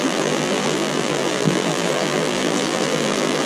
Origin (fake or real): fake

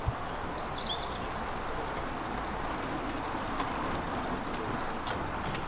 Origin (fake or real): real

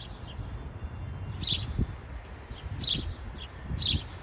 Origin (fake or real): real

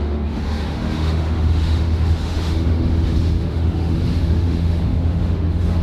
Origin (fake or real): fake